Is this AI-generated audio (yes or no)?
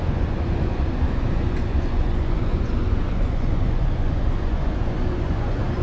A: yes